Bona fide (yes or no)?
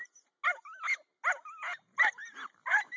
yes